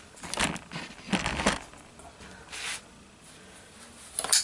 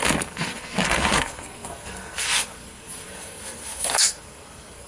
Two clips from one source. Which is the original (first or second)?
first